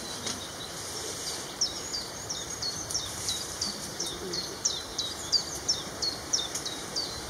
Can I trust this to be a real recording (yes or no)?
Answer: no